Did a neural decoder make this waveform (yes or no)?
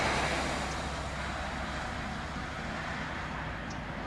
no